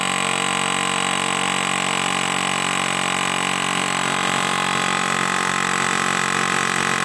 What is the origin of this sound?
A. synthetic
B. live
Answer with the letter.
B